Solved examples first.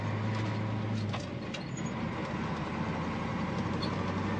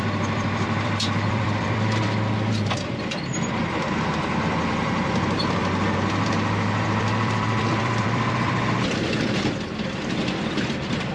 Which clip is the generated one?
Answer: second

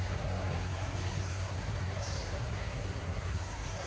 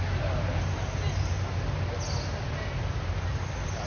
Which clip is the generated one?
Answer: first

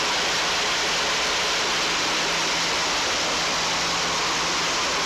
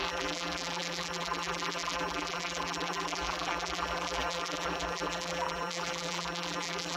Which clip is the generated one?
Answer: second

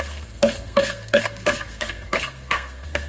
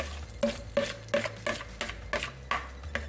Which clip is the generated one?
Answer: first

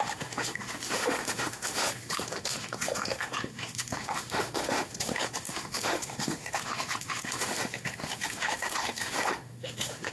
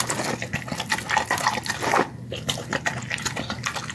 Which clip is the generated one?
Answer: first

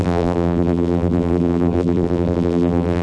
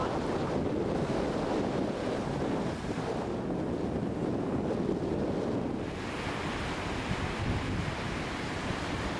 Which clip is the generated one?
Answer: first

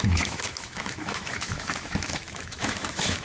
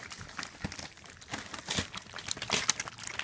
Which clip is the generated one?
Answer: first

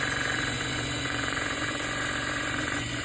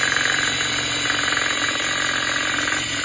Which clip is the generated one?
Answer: first